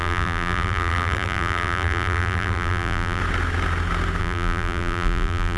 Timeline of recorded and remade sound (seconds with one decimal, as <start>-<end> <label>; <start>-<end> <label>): 0.0-3.2 remade; 3.2-4.2 recorded; 4.2-5.6 remade